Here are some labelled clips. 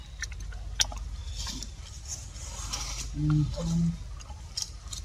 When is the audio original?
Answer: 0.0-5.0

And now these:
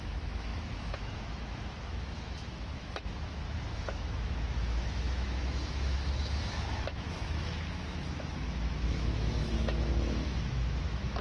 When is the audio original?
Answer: none

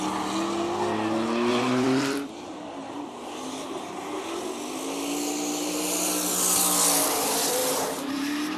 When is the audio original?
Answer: 0.0-1.5; 4.2-7.6

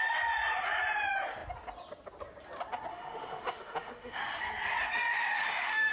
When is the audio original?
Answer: 0.0-2.9; 4.4-5.1

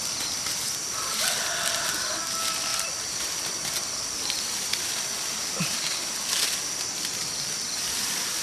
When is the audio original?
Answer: 0.0-2.7; 5.2-8.4